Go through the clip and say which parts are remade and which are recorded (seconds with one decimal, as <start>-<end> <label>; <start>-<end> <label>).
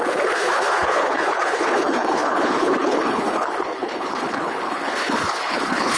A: 0.0-6.0 remade